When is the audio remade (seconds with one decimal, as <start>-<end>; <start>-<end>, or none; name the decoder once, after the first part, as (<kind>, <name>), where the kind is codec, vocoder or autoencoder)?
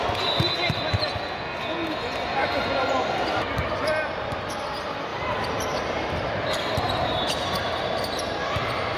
1.8-3.7 (vocoder, BigVGAN v2); 5.1-9.0